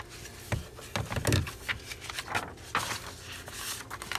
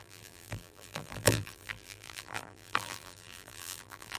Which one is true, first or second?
first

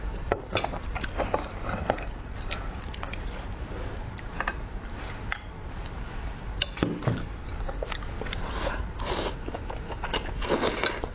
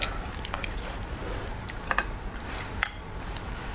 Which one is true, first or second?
second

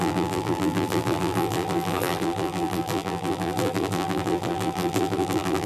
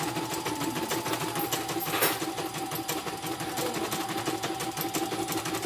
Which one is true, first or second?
second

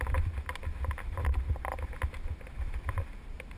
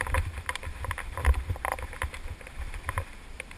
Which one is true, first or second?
first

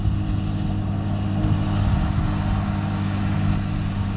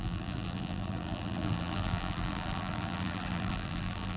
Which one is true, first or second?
first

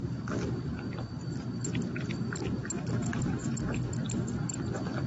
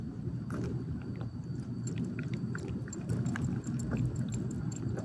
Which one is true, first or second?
first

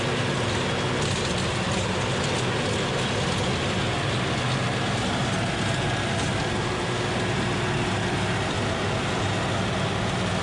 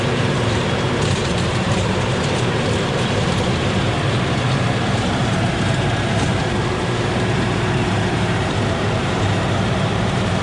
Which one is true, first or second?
first